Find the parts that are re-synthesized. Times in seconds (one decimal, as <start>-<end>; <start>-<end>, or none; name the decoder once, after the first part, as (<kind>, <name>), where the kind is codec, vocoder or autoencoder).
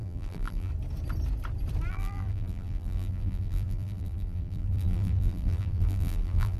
0.0-0.7 (vocoder, BigVGAN v2); 1.9-6.6